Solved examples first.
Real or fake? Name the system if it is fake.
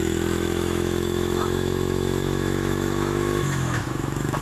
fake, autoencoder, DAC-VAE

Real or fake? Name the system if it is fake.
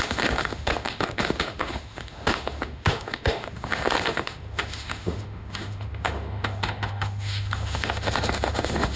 fake, autoencoder, DAC-VAE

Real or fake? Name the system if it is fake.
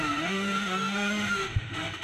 fake, autoencoder, DAC-VAE